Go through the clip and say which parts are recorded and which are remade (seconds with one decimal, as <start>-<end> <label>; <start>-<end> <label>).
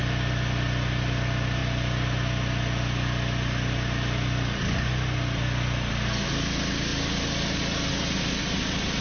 0.0-9.0 recorded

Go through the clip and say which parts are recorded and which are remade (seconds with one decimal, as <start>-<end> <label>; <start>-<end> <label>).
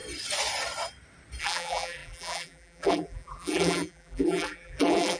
0.0-1.4 recorded; 1.4-5.2 remade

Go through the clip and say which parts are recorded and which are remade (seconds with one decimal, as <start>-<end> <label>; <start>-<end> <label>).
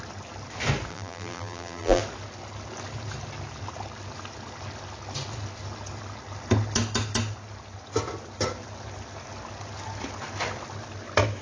0.0-0.9 recorded; 0.9-2.0 remade; 2.0-11.4 recorded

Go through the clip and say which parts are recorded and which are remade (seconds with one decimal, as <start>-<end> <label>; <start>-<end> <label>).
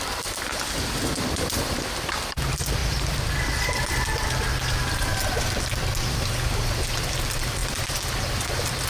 0.0-5.1 remade; 5.1-6.1 recorded; 6.1-8.9 remade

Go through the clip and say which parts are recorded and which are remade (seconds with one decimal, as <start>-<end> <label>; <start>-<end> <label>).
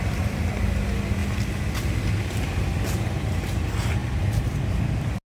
0.0-4.0 recorded; 4.0-4.8 remade; 4.8-5.3 recorded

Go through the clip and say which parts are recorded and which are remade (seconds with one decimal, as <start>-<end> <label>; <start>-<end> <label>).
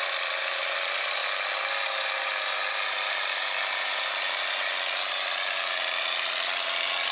0.0-1.2 remade; 1.2-2.7 recorded; 2.7-7.1 remade